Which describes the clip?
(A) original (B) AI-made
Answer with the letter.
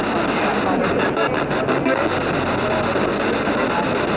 A